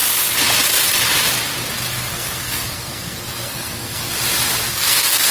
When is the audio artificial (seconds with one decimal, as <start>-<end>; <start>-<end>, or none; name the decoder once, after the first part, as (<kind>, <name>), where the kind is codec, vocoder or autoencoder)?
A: 1.9-4.0 (codec, SNAC); 4.7-5.3